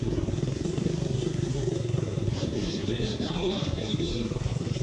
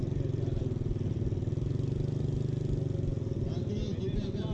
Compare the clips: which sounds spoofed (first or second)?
first